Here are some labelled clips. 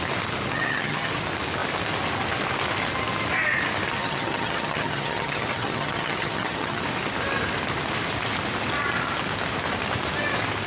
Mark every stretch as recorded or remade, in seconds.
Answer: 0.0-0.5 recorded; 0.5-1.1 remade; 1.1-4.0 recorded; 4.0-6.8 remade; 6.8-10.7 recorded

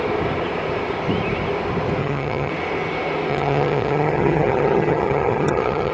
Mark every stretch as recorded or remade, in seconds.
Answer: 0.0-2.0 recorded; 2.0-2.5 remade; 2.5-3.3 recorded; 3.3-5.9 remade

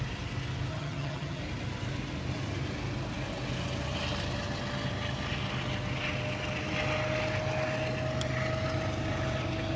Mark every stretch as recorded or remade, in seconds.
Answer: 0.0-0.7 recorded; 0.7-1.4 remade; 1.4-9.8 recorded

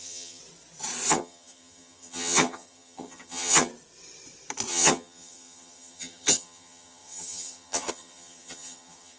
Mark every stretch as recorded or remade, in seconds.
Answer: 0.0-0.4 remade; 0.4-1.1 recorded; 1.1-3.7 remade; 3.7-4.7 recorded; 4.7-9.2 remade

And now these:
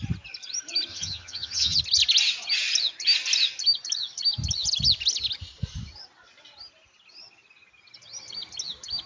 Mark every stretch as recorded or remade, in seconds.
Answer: 0.0-0.9 recorded; 0.9-1.8 remade; 1.8-9.1 recorded